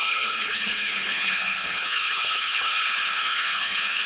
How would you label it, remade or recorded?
remade